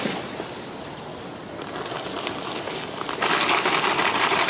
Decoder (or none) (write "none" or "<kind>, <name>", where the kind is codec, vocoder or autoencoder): none